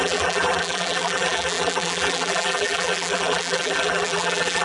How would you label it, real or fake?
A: fake